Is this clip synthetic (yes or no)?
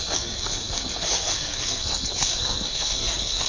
yes